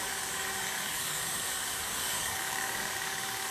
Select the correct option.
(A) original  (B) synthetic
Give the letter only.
B